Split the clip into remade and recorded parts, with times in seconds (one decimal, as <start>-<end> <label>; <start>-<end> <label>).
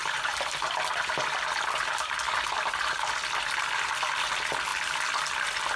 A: 0.0-2.9 remade; 2.9-4.7 recorded; 4.7-5.8 remade